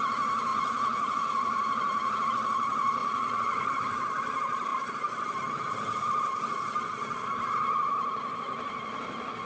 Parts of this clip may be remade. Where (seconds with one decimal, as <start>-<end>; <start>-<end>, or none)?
0.5-2.3; 3.0-3.7